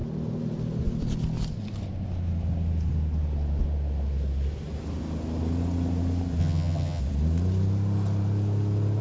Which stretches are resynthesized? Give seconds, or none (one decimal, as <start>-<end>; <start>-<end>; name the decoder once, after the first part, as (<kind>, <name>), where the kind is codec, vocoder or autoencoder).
6.4-7.0 (vocoder, HiFi-GAN)